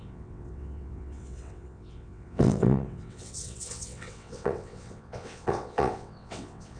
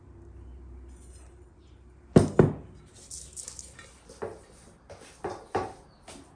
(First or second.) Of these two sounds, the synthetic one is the first